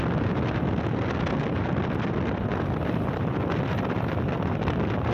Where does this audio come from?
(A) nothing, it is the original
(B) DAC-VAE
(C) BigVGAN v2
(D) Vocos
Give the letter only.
A